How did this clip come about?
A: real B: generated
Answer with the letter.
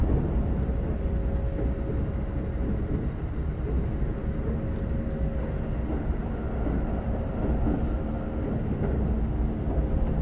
A